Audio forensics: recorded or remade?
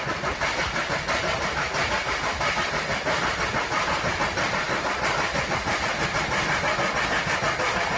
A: recorded